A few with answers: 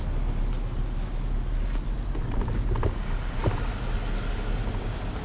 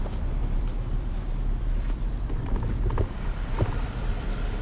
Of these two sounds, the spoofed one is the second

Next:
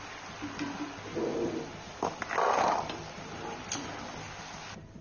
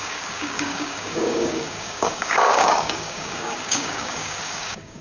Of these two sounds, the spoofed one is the second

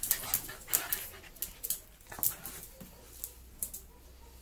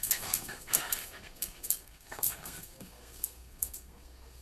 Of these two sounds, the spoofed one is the second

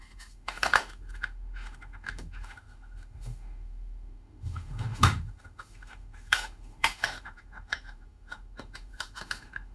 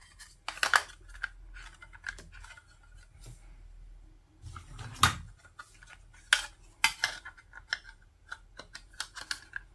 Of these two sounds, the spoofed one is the first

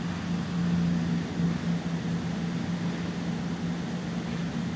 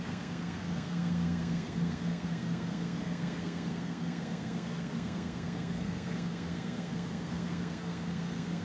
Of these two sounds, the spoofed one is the second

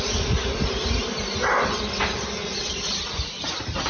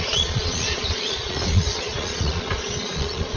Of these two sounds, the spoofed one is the second